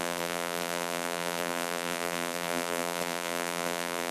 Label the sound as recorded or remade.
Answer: remade